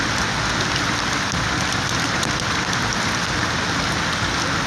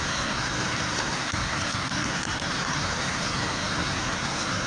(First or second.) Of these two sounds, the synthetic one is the second